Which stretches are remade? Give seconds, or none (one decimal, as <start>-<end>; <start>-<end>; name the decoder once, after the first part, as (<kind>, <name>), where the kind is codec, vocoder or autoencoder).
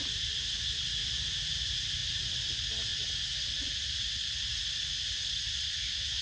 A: none